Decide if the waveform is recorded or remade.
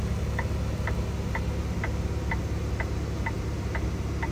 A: recorded